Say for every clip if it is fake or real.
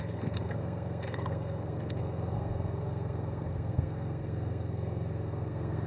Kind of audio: fake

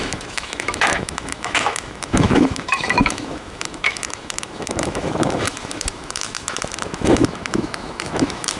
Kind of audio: fake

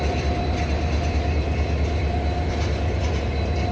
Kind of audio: fake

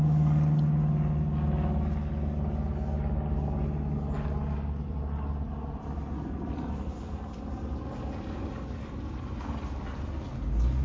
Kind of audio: real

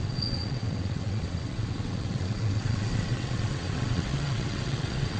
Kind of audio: fake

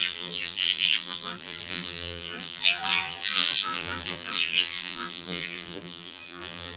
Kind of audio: fake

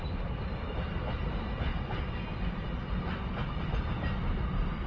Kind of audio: real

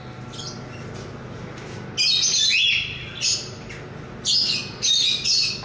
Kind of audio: real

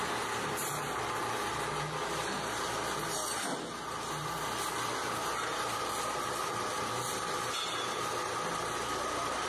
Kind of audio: real